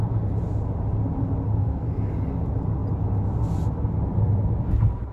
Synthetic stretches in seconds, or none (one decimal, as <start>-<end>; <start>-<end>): 1.5-2.1